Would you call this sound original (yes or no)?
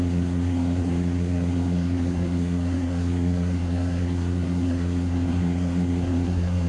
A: no